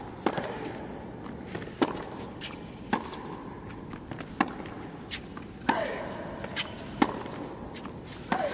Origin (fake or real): real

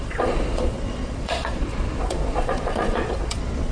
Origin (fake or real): fake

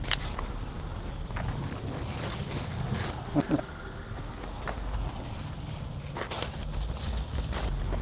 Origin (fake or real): real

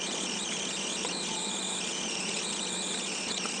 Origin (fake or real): fake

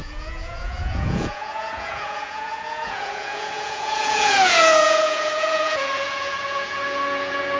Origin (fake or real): fake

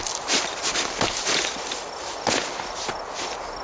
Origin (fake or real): real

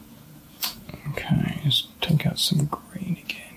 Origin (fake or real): fake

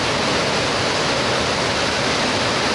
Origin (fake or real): real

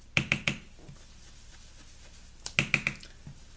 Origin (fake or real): real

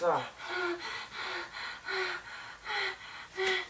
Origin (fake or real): real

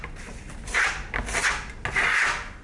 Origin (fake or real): real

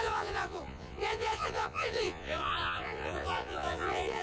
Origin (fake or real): fake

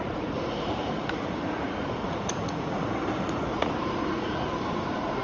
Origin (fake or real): fake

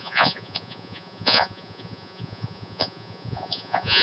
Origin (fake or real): fake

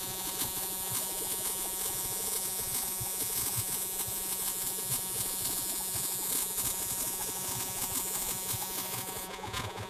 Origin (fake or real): fake